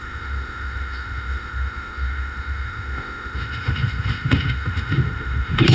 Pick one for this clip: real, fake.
fake